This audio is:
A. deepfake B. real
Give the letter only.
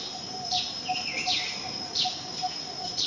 B